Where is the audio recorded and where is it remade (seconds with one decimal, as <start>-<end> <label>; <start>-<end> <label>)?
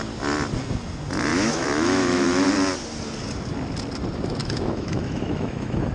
0.0-1.3 recorded; 1.3-2.5 remade; 2.5-4.4 recorded; 4.4-5.9 remade